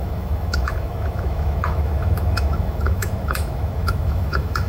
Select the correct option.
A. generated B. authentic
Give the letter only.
A